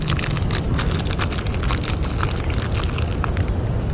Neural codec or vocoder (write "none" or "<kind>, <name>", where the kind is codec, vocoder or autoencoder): vocoder, BigVGAN v2